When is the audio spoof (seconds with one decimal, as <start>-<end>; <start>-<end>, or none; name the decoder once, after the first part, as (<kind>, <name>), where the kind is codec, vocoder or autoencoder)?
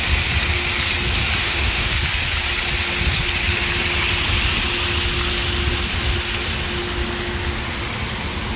1.4-1.9 (autoencoder, DAC-VAE)